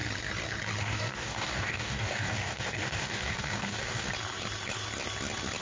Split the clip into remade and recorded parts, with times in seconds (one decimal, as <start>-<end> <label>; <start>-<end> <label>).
0.0-0.8 recorded; 0.8-4.1 remade; 4.1-5.6 recorded